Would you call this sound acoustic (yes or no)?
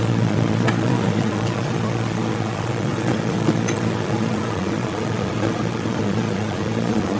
no